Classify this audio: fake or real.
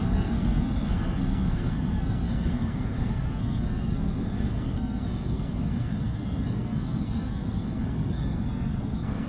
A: fake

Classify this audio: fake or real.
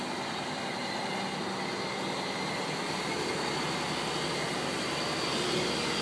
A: real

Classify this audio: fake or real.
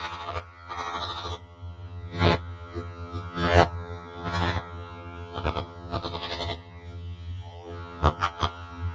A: fake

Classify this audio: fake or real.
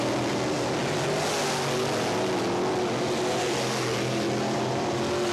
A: real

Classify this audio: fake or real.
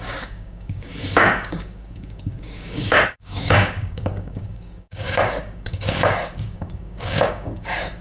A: fake